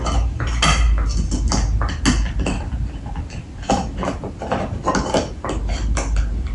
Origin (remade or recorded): recorded